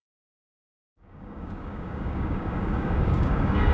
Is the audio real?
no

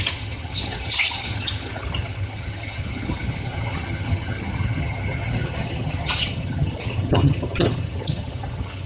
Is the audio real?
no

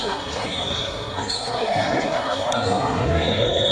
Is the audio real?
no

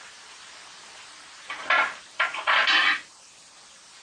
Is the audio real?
no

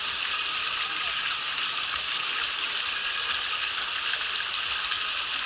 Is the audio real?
yes